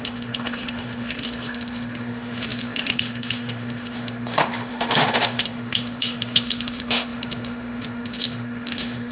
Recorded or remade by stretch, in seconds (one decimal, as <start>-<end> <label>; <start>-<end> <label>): 0.0-9.1 remade